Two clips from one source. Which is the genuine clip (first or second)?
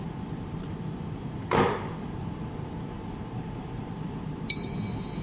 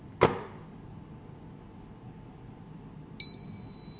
second